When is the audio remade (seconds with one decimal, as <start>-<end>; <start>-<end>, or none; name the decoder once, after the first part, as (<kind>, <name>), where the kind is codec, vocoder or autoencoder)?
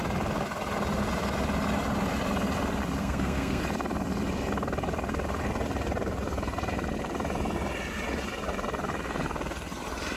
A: 3.0-3.6 (codec, SNAC)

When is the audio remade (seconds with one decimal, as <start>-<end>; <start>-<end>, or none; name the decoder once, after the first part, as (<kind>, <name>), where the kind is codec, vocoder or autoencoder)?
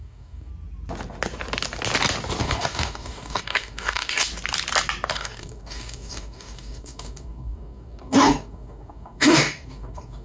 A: 0.0-0.5 (codec, DAC); 2.4-4.3; 5.1-10.2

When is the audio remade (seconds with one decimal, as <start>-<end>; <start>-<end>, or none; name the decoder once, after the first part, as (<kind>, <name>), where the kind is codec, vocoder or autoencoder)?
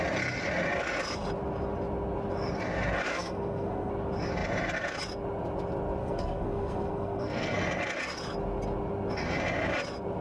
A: 3.1-3.9 (codec, SNAC); 6.0-7.6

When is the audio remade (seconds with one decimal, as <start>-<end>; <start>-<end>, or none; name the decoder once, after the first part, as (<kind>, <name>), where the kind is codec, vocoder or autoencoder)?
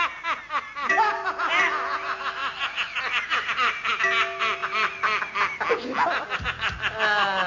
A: 2.4-3.9 (vocoder, BigVGAN v2)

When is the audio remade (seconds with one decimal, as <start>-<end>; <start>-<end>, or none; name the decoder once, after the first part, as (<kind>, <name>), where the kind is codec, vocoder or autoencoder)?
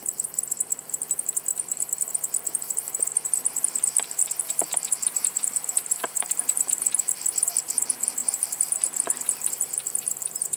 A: 0.0-10.6 (vocoder, BigVGAN v2)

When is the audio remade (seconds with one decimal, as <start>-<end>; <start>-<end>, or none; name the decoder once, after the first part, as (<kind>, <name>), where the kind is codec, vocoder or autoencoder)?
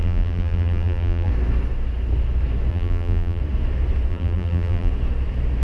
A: 0.0-1.3 (vocoder, BigVGAN v2); 2.7-3.4; 4.1-4.9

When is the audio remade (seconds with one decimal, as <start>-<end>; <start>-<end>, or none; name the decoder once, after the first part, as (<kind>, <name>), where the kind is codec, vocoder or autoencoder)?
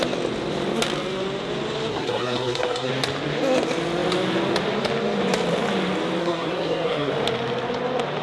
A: 1.9-2.9 (codec, SNAC); 6.2-7.1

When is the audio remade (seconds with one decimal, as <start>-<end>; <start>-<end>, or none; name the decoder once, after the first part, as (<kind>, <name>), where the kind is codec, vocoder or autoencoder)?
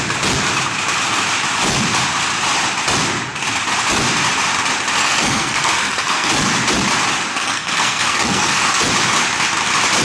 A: 5.0-6.3 (codec, SNAC); 7.3-8.8